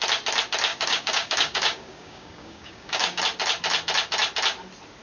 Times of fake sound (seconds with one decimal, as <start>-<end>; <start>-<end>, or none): 0.7-3.2